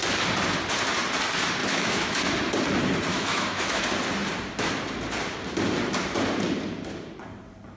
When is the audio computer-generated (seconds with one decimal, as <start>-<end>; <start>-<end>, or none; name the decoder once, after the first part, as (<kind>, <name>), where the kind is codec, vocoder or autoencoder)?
1.6-2.2 (autoencoder, DAC-VAE); 3.1-3.8